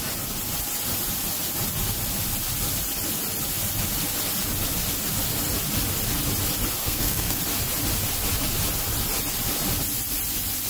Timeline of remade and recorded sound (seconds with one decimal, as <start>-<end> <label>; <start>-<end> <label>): 0.0-6.8 recorded; 6.8-7.4 remade; 7.4-10.7 recorded